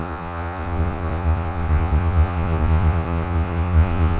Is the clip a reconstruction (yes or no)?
yes